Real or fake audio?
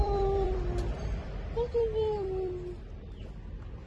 fake